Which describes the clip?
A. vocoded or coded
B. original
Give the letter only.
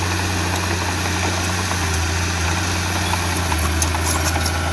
B